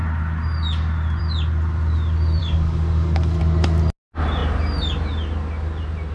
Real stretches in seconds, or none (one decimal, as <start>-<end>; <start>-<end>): 0.0-2.4; 3.4-6.1